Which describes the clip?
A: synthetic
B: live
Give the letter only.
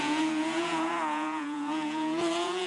A